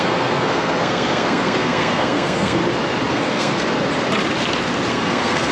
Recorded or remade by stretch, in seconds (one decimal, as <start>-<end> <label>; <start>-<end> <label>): 0.0-2.6 remade; 2.6-3.1 recorded; 3.1-3.7 remade; 3.7-4.9 recorded; 4.9-5.5 remade